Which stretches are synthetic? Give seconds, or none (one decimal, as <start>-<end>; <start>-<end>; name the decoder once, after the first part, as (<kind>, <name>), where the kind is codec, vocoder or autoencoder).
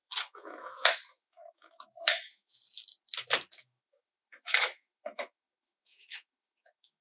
0.0-2.6 (autoencoder, DAC-VAE); 3.6-7.0